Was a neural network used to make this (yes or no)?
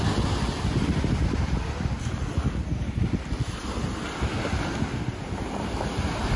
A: no